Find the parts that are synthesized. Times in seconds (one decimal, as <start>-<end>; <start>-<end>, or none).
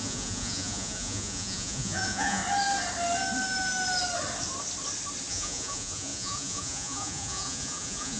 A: 0.0-2.4; 5.3-8.2